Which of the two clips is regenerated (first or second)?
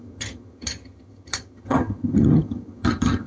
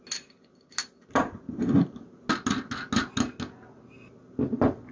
first